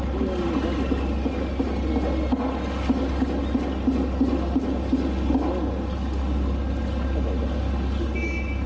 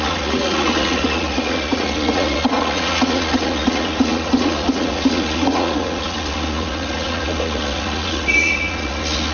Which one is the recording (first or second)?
first